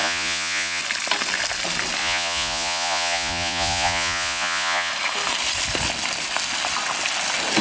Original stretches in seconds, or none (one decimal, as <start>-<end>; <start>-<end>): 0.8-2.0; 4.9-7.6